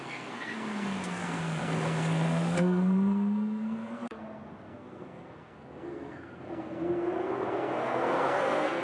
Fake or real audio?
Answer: fake